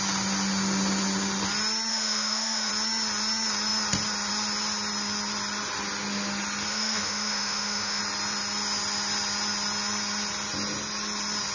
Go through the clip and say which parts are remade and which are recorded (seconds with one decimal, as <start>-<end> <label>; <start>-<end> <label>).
0.0-1.9 recorded; 1.9-2.7 remade; 2.7-6.7 recorded; 6.7-8.0 remade; 8.0-11.5 recorded